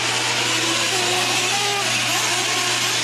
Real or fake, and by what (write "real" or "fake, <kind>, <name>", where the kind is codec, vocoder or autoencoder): real